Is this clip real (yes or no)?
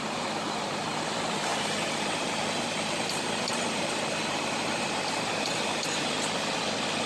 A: no